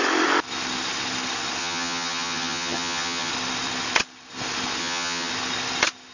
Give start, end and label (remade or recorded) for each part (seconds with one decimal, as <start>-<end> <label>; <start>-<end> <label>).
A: 0.0-1.6 recorded; 1.6-3.3 remade; 3.3-4.8 recorded; 4.8-5.3 remade; 5.3-6.1 recorded